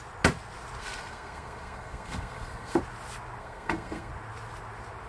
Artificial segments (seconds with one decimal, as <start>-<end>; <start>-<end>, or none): 0.8-2.8; 3.4-4.1